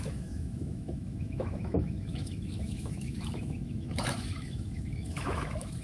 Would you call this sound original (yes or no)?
no